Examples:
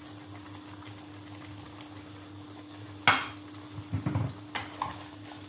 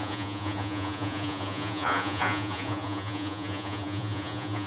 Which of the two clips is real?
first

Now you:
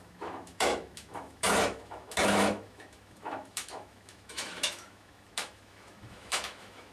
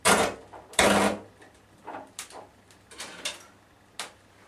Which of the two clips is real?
second